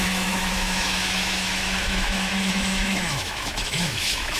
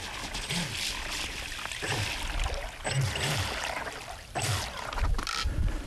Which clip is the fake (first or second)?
first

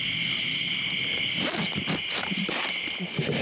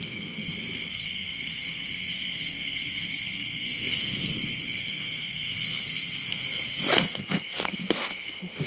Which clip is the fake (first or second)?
second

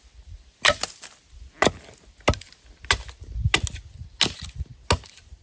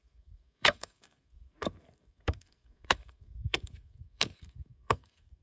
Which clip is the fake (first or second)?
second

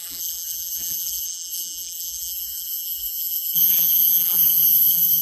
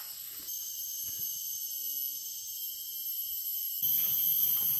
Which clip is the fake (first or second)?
first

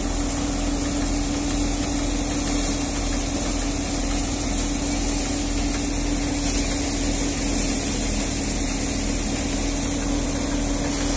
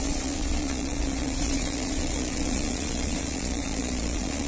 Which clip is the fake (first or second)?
second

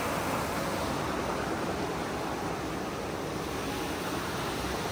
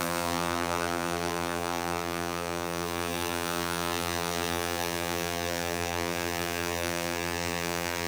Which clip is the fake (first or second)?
second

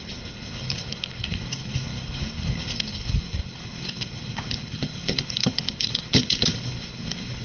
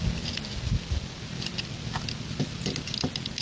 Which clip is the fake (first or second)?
first